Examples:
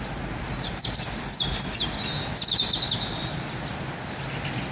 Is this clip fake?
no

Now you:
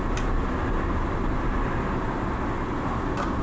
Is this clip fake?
no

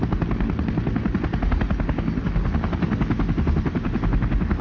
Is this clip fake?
no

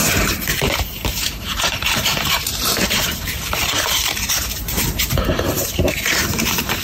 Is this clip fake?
yes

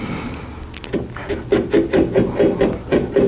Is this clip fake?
no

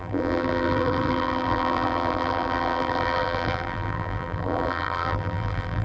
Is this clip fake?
yes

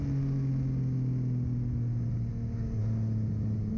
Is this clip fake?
no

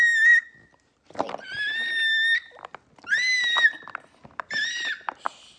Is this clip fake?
no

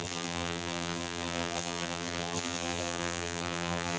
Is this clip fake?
yes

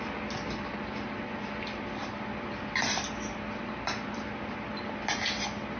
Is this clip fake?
no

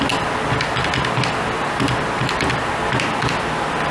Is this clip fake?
no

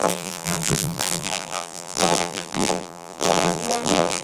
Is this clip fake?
yes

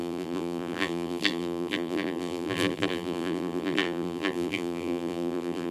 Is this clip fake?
yes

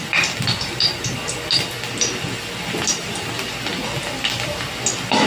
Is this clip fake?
no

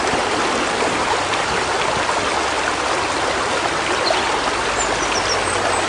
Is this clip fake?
yes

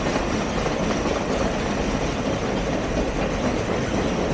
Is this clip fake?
no